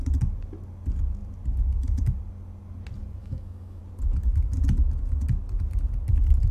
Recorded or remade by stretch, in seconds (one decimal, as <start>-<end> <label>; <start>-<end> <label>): 0.0-3.2 recorded; 3.2-3.8 remade; 3.8-6.5 recorded